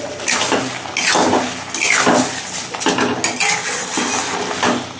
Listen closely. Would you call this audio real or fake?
real